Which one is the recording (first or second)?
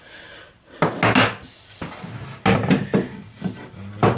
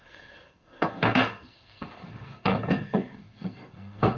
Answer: first